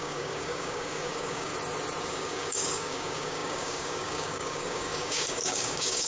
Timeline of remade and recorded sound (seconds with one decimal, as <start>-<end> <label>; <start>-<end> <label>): 0.0-1.5 remade; 1.5-2.0 recorded; 2.0-6.1 remade